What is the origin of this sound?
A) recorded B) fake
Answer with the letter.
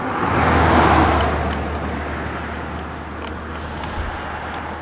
A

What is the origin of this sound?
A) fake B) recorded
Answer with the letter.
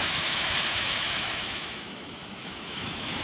A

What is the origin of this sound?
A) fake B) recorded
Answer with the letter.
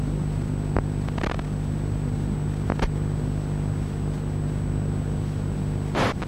B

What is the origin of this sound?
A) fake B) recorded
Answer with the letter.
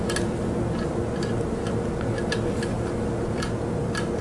B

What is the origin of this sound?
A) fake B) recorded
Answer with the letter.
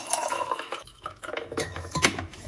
A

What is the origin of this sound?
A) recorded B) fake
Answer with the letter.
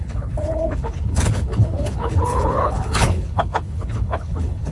B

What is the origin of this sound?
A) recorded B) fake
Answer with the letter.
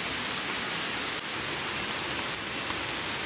A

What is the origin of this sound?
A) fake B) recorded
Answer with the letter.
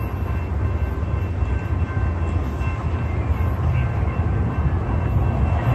B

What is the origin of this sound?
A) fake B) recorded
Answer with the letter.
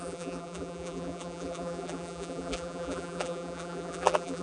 A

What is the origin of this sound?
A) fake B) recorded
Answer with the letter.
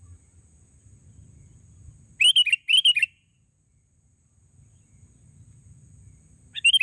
B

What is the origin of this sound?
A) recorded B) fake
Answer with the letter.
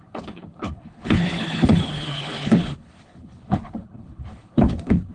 B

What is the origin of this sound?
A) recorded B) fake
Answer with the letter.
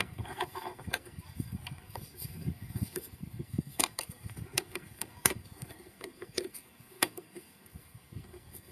B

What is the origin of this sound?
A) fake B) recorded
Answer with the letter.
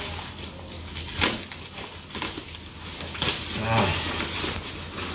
B